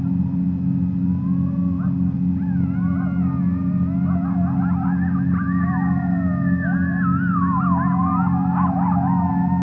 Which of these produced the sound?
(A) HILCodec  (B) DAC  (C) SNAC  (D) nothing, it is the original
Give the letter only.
D